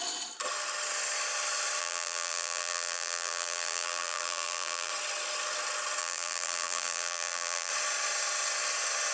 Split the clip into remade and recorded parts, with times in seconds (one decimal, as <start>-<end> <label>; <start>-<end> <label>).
0.0-1.8 recorded; 1.8-4.9 remade; 4.9-6.0 recorded; 6.0-7.7 remade; 7.7-9.1 recorded